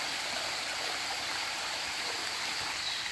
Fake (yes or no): no